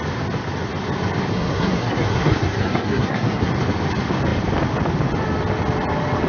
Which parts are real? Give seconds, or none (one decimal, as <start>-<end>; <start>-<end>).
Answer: 0.0-1.3; 3.5-6.3